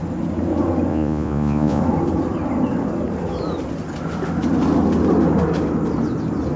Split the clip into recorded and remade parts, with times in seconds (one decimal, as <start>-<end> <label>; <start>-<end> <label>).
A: 0.0-0.9 recorded; 0.9-1.8 remade; 1.8-6.6 recorded